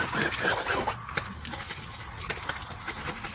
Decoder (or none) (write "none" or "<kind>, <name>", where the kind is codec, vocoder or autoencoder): none